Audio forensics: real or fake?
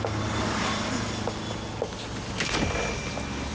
real